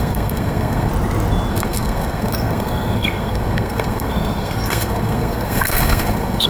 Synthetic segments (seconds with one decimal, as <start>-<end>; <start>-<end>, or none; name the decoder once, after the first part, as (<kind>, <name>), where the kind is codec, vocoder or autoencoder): 0.0-0.9 (codec, SNAC); 1.5-6.5